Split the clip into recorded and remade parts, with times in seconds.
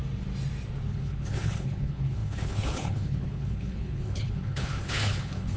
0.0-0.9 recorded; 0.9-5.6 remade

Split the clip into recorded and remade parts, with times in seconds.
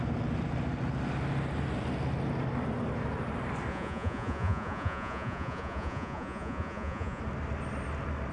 0.0-3.7 recorded; 3.7-7.2 remade; 7.2-8.3 recorded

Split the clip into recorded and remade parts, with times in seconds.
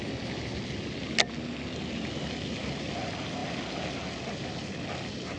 0.0-5.4 recorded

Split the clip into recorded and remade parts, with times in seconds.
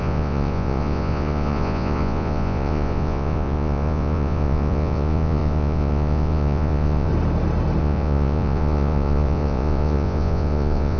0.0-7.1 remade; 7.1-7.8 recorded; 7.8-11.0 remade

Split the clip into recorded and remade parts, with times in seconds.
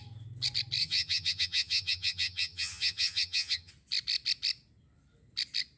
0.0-0.8 recorded; 0.8-3.7 remade; 3.7-5.8 recorded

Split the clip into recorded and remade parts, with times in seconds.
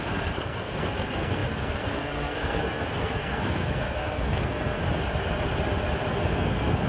0.0-4.8 remade; 4.8-6.1 recorded; 6.1-6.9 remade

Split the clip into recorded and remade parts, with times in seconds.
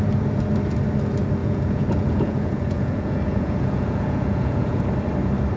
0.0-1.4 recorded; 1.4-4.8 remade; 4.8-5.6 recorded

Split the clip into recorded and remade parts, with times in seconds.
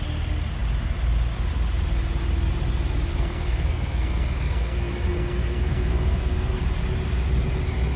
0.0-3.1 recorded; 3.1-6.6 remade; 6.6-8.0 recorded